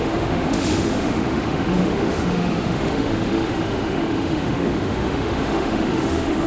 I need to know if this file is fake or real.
fake